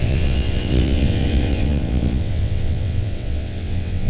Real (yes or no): no